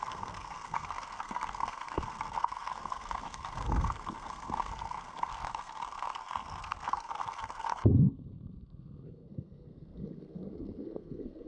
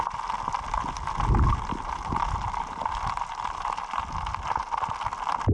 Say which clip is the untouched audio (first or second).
second